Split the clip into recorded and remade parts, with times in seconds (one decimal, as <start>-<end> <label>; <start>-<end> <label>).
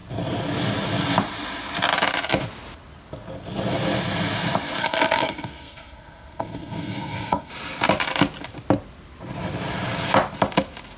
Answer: 0.0-4.8 recorded; 4.8-7.5 remade; 7.5-11.0 recorded